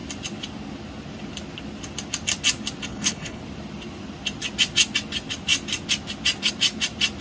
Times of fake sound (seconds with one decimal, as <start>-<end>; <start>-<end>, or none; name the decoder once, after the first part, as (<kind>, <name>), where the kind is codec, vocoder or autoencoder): 2.9-3.4 (codec, HILCodec)